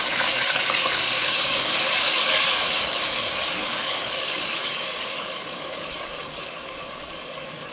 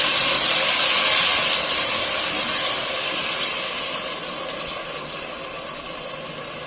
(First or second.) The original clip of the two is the second